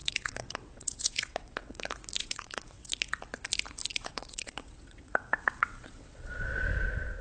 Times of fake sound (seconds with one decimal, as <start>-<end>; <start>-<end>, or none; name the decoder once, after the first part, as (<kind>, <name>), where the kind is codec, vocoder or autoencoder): 0.0-1.8 (vocoder, WaveNeXt); 2.2-2.9; 3.9-6.3